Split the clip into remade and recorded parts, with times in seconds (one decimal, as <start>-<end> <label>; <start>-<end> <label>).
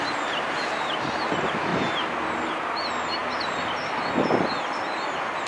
0.0-5.5 recorded